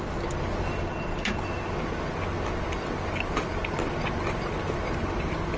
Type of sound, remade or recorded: recorded